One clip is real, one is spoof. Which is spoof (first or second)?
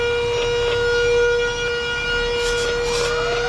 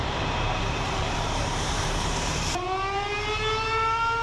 second